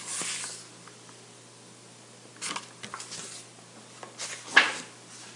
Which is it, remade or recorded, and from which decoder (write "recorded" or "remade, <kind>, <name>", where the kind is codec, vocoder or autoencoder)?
recorded